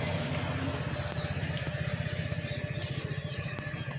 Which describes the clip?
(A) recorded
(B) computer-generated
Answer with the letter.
A